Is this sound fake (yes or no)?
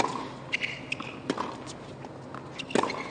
no